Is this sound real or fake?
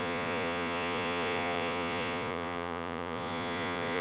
fake